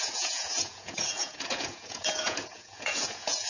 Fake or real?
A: fake